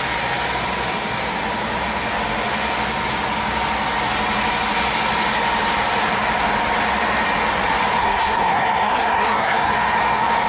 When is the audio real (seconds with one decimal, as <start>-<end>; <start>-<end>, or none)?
0.0-8.0; 9.7-10.5